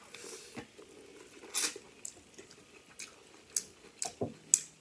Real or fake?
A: real